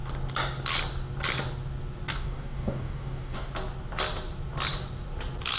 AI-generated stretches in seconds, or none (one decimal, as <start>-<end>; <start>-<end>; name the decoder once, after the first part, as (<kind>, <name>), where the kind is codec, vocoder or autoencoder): 2.1-3.5 (codec, DAC)